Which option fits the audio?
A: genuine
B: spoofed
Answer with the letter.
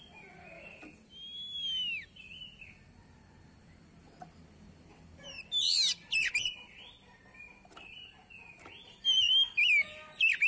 A